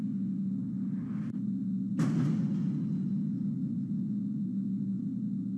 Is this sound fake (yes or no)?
no